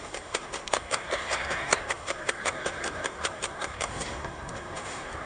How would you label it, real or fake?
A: fake